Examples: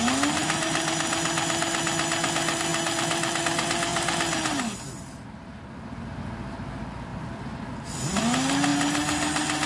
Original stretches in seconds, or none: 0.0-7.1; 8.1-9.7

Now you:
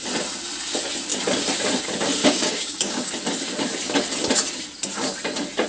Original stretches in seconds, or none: 0.0-2.2; 3.1-5.7

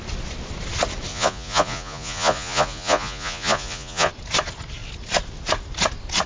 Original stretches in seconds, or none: 0.0-1.1; 4.1-6.3

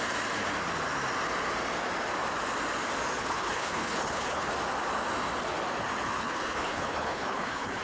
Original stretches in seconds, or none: 0.0-3.2; 4.5-6.2

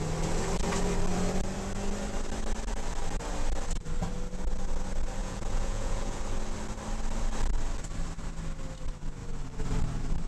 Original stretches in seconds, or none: 0.0-5.2; 6.2-10.3

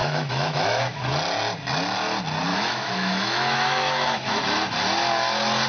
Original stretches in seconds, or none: 1.0-2.5; 4.4-5.7